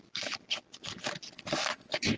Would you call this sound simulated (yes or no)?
no